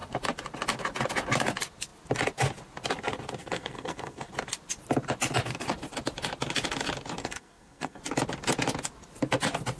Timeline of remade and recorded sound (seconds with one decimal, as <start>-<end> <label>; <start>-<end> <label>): 0.0-3.4 recorded; 3.4-4.3 remade; 4.3-7.2 recorded; 7.2-8.0 remade; 8.0-9.8 recorded